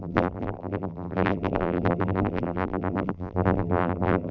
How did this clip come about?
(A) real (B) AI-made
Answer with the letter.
B